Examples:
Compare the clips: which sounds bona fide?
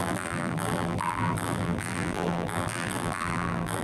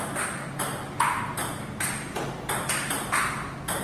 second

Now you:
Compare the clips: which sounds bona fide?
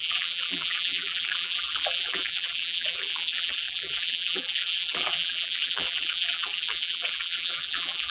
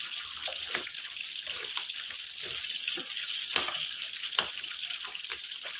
second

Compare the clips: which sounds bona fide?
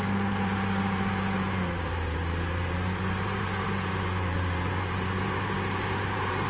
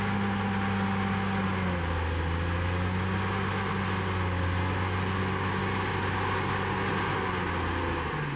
second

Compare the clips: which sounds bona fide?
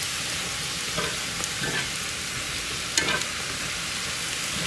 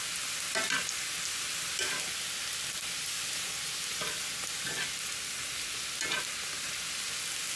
second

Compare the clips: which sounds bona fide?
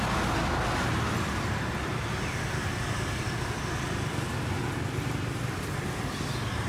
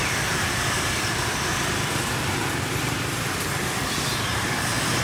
first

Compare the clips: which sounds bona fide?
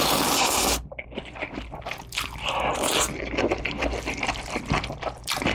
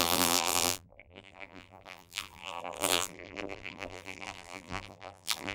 first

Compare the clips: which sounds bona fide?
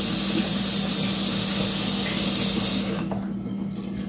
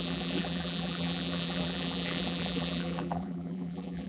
first